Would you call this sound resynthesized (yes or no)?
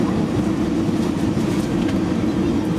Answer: yes